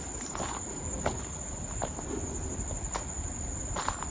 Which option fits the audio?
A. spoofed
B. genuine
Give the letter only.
B